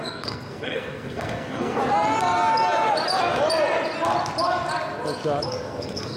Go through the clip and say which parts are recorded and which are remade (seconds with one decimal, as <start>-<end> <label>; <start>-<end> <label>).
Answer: 0.0-1.8 remade; 1.8-5.5 recorded; 5.5-6.2 remade